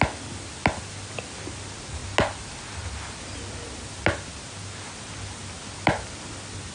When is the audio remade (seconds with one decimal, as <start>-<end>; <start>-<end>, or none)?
none